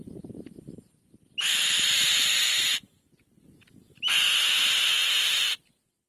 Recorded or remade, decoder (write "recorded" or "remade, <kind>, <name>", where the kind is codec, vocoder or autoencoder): recorded